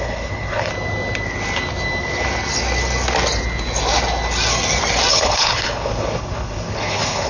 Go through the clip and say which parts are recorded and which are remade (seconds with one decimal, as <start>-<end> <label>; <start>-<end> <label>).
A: 0.0-0.7 remade; 0.7-5.1 recorded; 5.1-7.3 remade